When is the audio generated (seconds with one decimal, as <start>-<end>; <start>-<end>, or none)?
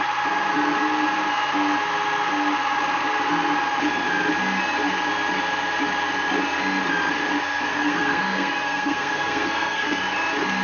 7.7-10.0